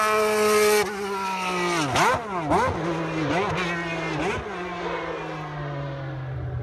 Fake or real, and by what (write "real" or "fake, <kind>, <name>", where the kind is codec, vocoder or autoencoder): real